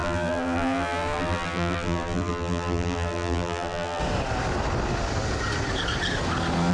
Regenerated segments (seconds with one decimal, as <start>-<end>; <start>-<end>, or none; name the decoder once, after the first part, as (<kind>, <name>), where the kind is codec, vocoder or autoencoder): 0.0-4.0 (vocoder, BigVGAN v2)